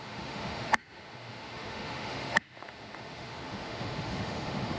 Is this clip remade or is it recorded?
remade